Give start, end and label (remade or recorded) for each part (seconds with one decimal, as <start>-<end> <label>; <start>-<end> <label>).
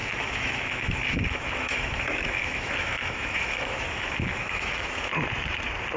0.0-5.1 remade; 5.1-6.0 recorded